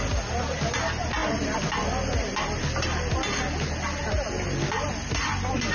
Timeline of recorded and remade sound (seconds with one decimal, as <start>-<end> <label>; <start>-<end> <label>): 0.0-5.7 recorded